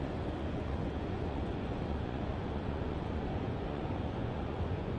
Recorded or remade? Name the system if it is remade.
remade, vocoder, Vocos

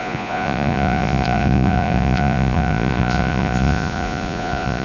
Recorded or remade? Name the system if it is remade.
remade, vocoder, Vocos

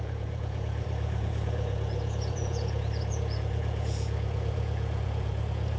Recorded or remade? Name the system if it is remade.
remade, vocoder, Vocos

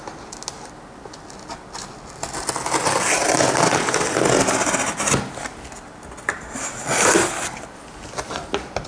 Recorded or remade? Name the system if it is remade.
recorded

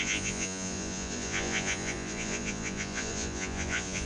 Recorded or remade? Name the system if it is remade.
remade, vocoder, Vocos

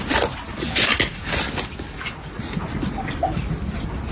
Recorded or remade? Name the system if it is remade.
recorded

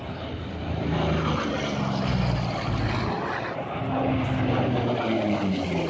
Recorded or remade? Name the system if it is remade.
recorded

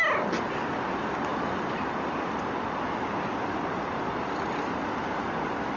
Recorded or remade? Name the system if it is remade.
recorded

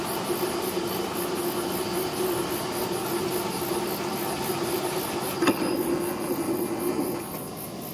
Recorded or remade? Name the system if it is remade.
recorded